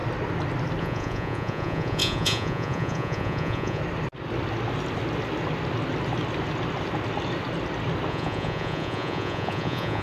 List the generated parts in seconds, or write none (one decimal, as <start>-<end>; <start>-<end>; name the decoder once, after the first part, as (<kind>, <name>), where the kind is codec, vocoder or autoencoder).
0.8-3.8 (vocoder, Vocos); 8.1-10.0